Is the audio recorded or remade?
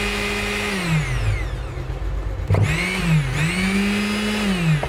recorded